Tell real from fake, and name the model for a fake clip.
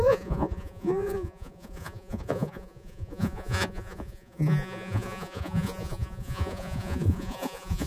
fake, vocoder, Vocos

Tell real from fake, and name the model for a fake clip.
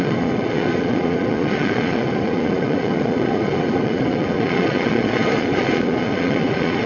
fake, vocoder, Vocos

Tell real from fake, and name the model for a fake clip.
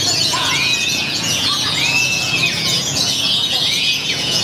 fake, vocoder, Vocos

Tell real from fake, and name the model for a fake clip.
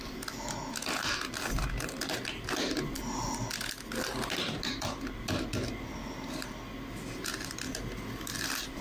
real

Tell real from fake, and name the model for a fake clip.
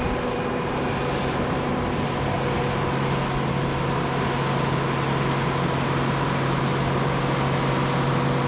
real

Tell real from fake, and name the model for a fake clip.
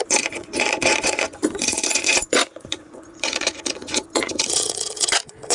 fake, vocoder, Vocos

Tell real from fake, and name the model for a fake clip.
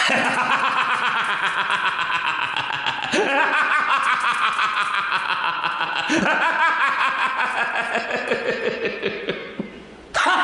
fake, vocoder, Vocos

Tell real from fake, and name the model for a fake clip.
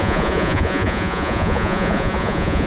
fake, vocoder, Vocos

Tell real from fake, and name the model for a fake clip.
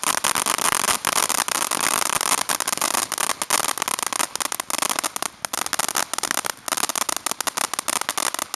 real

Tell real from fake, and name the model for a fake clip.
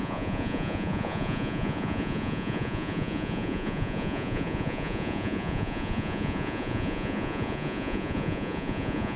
fake, vocoder, Vocos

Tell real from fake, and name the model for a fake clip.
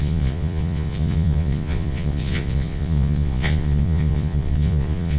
fake, vocoder, Vocos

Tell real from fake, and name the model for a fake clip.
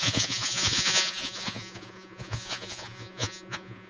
fake, vocoder, Vocos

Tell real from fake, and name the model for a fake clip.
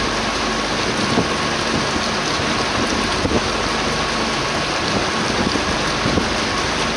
real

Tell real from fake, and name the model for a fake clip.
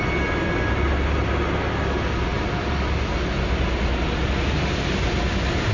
real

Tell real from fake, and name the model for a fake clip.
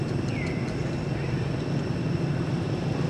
real